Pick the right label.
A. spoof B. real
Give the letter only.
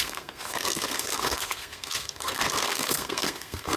A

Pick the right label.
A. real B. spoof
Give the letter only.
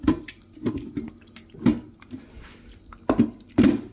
A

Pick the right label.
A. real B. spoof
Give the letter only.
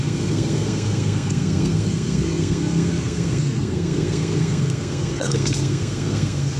B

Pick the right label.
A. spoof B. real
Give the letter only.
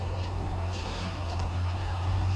A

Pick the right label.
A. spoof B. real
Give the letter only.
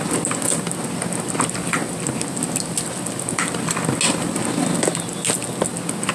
B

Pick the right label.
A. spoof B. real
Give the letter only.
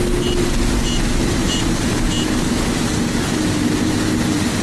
B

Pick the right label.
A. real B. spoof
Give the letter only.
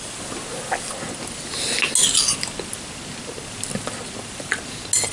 A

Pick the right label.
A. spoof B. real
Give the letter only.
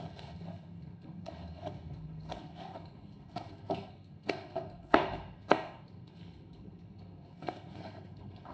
A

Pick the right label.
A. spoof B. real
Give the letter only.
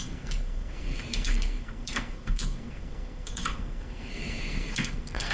A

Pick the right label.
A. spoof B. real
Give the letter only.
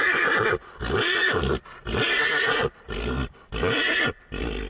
B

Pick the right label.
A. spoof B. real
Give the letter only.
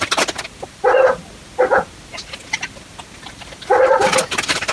B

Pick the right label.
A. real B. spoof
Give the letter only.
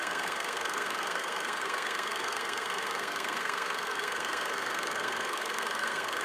B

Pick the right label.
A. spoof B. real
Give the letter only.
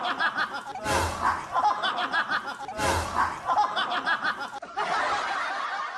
B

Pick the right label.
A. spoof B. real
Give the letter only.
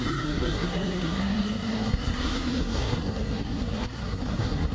A